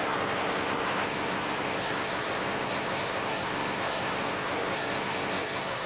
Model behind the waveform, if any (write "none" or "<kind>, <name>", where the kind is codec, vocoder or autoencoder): codec, SNAC